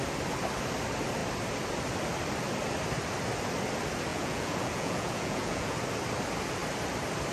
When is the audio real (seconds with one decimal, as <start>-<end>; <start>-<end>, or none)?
0.0-4.1; 5.8-7.3